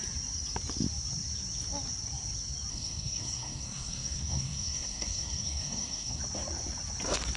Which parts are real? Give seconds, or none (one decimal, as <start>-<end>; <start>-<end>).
0.0-2.7; 6.2-7.4